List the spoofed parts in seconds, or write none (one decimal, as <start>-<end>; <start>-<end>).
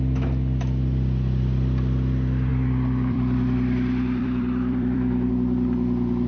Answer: 2.5-5.3